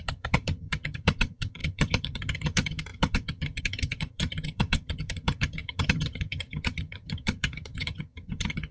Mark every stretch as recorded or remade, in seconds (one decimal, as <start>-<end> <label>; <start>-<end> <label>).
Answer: 0.0-8.7 remade